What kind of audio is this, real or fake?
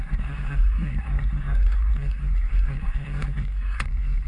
fake